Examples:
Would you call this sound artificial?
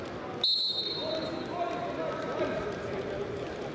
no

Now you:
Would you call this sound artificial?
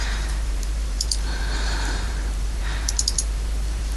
yes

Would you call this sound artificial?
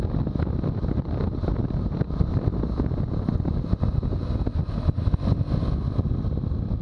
no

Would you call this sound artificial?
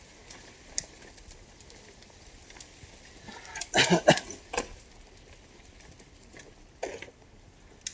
no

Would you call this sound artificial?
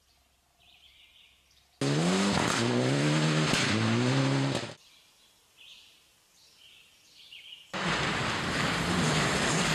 no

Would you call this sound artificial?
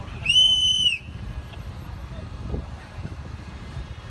yes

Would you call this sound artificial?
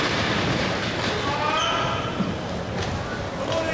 no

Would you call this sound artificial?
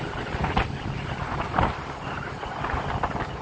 no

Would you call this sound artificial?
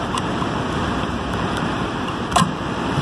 yes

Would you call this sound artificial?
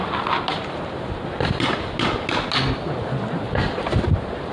no